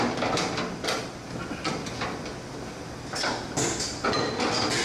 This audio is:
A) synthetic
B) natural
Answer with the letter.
B